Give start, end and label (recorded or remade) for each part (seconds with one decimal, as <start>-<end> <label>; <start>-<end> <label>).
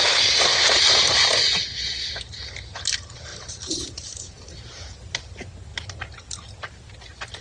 0.0-3.3 recorded; 3.3-5.2 remade; 5.2-7.4 recorded